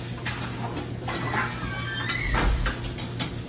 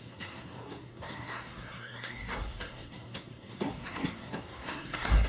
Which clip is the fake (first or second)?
second